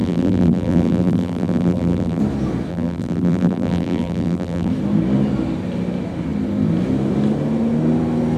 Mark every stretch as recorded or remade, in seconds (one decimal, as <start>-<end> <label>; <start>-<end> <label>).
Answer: 0.0-2.2 remade; 2.2-2.7 recorded; 2.7-4.7 remade; 4.7-8.4 recorded